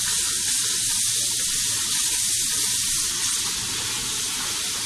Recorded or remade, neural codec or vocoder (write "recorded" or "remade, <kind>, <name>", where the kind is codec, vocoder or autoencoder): recorded